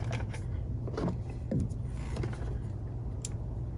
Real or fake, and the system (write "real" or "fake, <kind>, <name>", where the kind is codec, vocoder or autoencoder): real